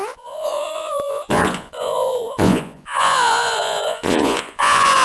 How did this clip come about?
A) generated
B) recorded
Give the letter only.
A